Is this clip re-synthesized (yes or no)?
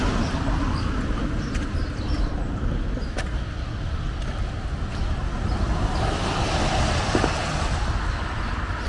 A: no